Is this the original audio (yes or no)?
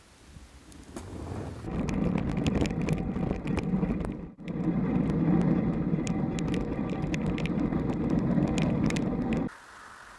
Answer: yes